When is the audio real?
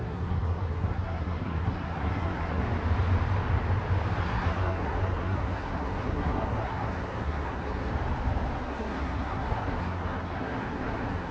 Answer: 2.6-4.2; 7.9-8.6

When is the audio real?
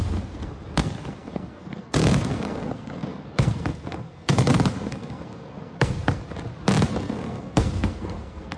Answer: 6.2-6.8